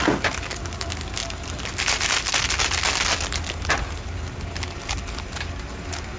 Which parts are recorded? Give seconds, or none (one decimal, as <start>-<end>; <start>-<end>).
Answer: 0.0-6.2

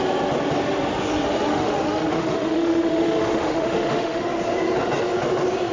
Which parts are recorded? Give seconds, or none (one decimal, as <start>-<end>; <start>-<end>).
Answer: 0.0-1.5; 4.2-5.7

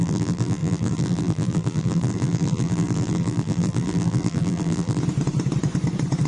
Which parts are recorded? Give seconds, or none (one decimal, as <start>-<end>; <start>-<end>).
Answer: 5.0-6.3

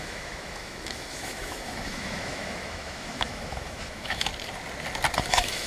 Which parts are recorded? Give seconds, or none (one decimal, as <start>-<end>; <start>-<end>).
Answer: 4.3-5.3

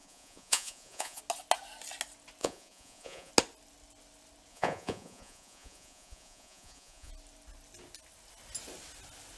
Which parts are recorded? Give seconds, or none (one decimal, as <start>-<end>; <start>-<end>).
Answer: 1.2-2.4; 3.3-4.5; 7.1-9.4

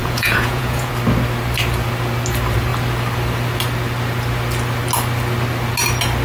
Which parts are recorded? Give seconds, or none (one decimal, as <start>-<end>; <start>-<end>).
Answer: 0.9-6.2

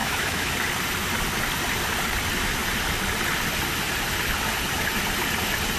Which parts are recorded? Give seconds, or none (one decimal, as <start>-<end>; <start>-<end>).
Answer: 0.5-5.8

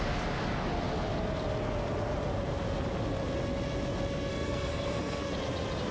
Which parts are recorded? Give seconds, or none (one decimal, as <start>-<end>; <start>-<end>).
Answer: 0.0-4.3; 5.2-5.9